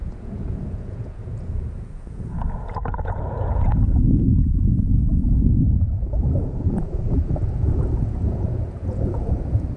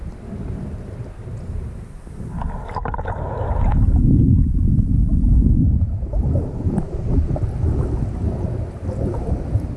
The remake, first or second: first